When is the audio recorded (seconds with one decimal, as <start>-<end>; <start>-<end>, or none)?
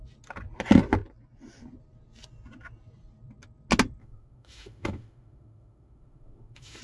0.0-4.0